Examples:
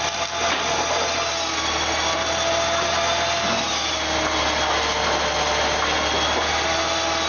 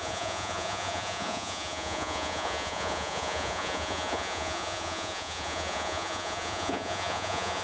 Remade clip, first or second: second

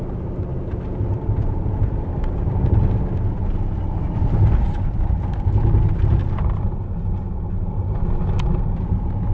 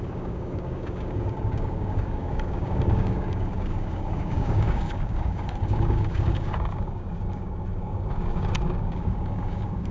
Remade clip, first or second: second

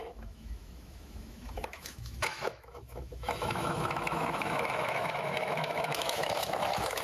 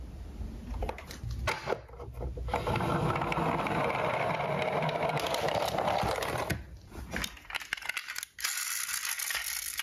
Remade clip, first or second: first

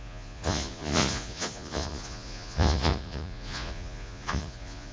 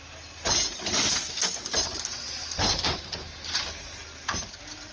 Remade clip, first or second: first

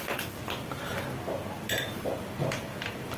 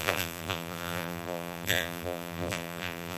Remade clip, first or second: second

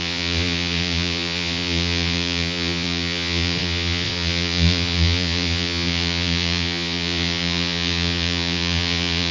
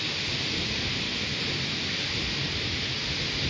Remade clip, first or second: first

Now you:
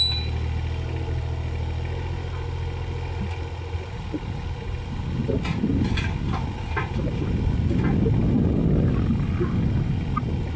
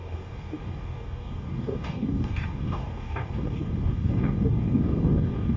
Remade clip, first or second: second